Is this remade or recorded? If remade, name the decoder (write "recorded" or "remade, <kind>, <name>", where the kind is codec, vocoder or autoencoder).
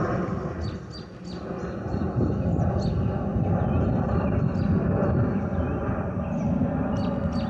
recorded